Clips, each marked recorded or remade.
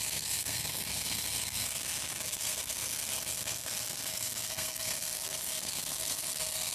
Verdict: remade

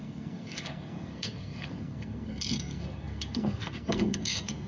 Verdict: remade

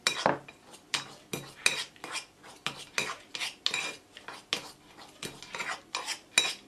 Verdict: recorded